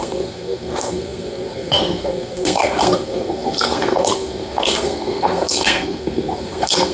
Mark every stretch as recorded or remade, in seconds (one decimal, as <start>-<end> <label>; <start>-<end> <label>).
0.0-6.9 remade